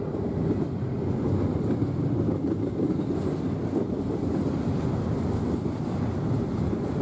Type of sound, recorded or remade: recorded